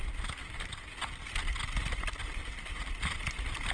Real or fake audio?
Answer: real